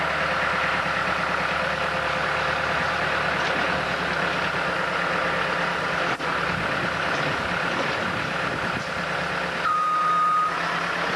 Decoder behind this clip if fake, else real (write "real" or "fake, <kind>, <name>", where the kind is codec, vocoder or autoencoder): real